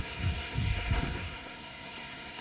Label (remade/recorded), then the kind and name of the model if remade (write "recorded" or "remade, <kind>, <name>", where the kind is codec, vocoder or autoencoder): remade, codec, SNAC